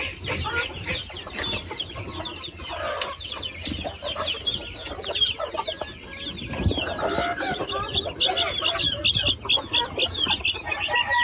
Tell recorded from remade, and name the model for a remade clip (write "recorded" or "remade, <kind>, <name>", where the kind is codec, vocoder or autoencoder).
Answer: recorded